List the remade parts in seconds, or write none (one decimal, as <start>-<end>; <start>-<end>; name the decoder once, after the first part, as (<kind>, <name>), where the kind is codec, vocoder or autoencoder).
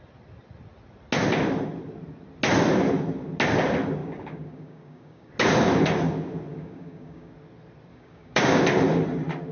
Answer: 4.0-5.3 (codec, DAC); 6.5-7.3; 7.9-8.6